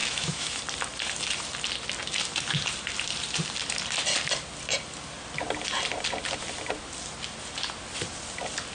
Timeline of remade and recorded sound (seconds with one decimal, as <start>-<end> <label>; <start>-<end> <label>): 0.0-0.6 remade; 0.6-8.7 recorded